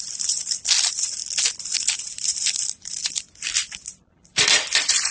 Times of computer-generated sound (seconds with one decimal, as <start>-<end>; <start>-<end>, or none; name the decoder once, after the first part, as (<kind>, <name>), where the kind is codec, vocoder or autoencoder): 0.0-1.2 (vocoder, BigVGAN v2); 2.0-5.1

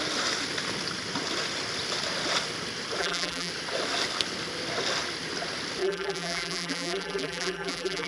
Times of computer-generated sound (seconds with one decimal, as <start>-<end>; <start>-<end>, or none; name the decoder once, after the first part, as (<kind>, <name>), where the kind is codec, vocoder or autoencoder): 3.0-3.5 (vocoder, BigVGAN v2); 5.8-8.1

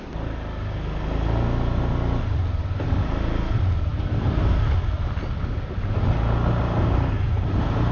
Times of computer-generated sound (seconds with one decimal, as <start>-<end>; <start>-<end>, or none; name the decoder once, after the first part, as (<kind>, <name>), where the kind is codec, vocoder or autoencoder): 6.6-7.9 (vocoder, BigVGAN v2)

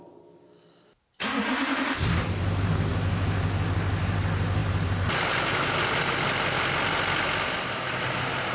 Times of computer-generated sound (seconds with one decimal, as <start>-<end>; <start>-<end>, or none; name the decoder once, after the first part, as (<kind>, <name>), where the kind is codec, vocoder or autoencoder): 4.6-5.7 (vocoder, BigVGAN v2)